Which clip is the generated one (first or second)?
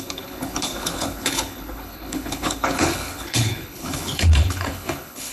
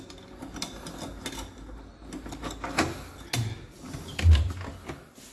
first